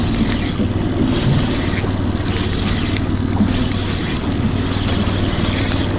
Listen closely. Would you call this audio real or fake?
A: real